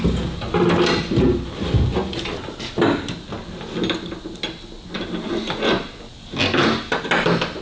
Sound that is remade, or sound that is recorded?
recorded